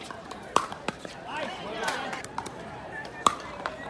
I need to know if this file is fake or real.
fake